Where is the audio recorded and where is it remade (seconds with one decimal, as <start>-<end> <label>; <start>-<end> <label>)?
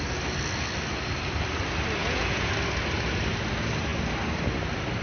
0.0-2.0 recorded; 2.0-2.5 remade; 2.5-5.0 recorded